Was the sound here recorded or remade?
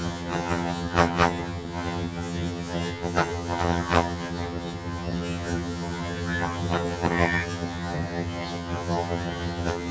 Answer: remade